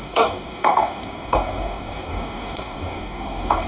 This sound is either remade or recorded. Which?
remade